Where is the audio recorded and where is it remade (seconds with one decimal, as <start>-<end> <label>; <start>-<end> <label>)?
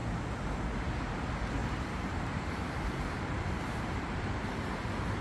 0.0-1.6 recorded; 1.6-4.7 remade; 4.7-5.2 recorded